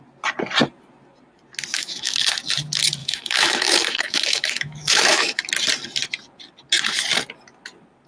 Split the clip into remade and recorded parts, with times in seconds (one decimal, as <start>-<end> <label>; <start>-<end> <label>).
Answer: 0.0-1.7 recorded; 1.7-2.2 remade; 2.2-3.0 recorded; 3.0-5.4 remade; 5.4-8.1 recorded